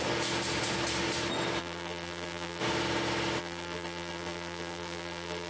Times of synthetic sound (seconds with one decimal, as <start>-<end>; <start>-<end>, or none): 1.6-2.6; 3.4-5.5